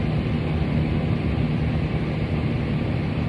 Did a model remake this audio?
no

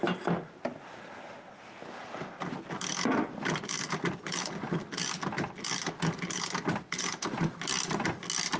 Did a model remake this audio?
no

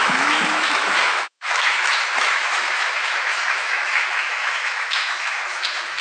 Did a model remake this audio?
yes